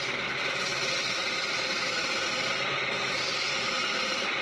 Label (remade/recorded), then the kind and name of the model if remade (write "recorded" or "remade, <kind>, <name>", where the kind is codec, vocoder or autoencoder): recorded